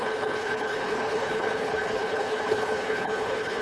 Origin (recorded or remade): remade